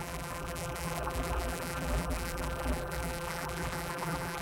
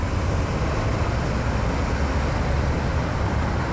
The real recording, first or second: second